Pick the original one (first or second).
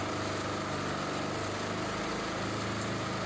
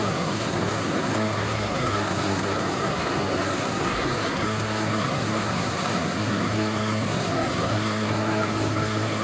first